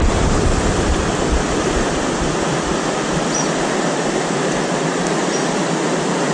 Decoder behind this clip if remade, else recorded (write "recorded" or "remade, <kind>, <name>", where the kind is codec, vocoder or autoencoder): recorded